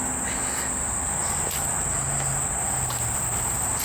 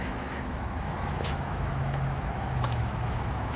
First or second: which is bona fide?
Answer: first